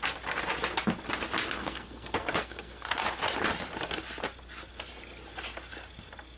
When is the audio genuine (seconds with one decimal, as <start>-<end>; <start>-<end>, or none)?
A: 0.0-1.6; 2.9-6.4